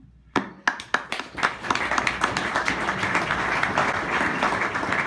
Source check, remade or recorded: recorded